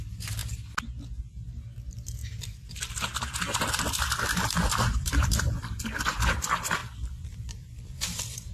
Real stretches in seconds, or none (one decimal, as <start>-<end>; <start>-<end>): 0.0-2.2; 5.8-6.8